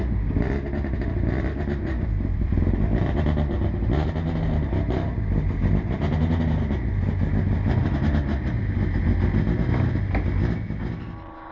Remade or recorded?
recorded